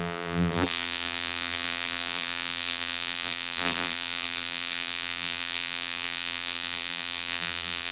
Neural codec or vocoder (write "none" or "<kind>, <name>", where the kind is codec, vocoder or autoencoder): vocoder, BigVGAN v2